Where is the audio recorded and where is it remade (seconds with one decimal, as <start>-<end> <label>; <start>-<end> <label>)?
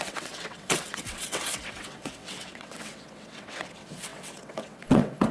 0.0-5.3 remade